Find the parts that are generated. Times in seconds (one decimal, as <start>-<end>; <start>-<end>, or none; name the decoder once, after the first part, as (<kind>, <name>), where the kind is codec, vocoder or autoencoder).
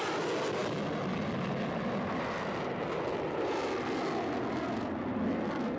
none